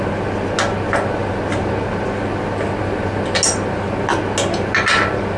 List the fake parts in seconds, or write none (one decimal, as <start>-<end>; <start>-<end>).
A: none